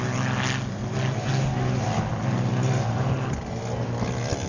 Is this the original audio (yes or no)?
yes